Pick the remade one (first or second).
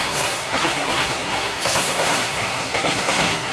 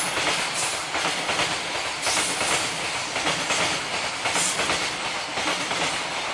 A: first